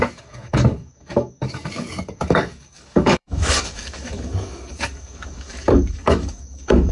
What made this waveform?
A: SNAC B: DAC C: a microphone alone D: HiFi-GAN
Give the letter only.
B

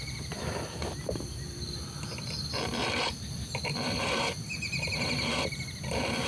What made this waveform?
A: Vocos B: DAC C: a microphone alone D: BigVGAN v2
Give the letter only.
C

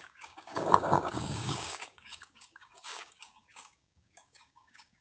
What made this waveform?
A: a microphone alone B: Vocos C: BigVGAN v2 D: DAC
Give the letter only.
D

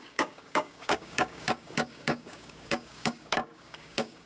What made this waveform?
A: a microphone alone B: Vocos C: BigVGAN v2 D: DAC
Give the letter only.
D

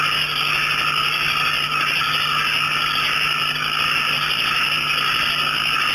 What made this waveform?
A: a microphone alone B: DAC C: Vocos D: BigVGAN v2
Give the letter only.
A